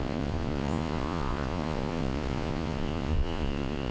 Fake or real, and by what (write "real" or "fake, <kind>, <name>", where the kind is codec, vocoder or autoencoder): fake, vocoder, Vocos